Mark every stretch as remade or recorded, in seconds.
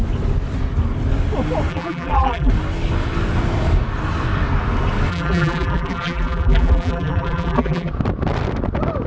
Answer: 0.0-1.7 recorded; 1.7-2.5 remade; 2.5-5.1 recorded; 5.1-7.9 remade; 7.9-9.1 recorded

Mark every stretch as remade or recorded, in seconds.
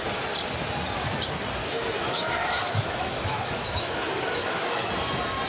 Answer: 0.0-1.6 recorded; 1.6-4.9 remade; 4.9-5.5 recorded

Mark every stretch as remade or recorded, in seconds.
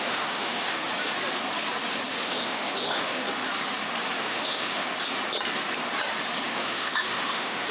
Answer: 0.0-0.8 remade; 0.8-2.2 recorded; 2.2-3.2 remade; 3.2-4.2 recorded; 4.2-4.9 remade; 4.9-6.5 recorded; 6.5-7.7 remade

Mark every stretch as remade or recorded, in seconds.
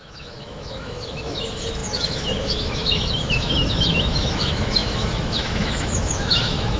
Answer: 0.0-6.8 remade